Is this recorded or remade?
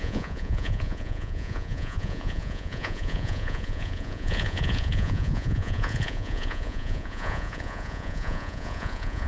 remade